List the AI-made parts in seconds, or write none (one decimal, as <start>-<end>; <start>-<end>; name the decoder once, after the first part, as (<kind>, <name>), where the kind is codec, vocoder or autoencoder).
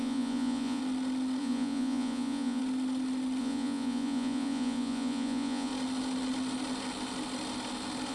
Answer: 0.0-0.8 (vocoder, Vocos); 1.4-2.6; 3.4-5.7